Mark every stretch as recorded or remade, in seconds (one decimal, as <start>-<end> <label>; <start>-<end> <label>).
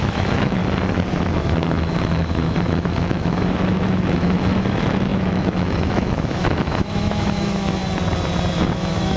0.0-0.6 remade; 0.6-1.2 recorded; 1.2-7.8 remade; 7.8-8.5 recorded; 8.5-9.2 remade